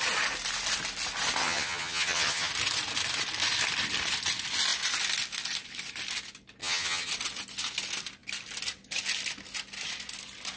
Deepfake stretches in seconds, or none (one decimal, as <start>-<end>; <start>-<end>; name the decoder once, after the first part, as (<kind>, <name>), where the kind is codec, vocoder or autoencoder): 1.4-2.5 (vocoder, HiFi-GAN); 6.6-7.1